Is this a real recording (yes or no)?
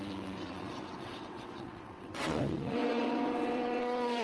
no